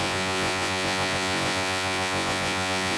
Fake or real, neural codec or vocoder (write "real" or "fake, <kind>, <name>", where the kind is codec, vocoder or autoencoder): fake, vocoder, Vocos